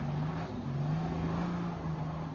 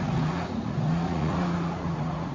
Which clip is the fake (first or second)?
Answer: second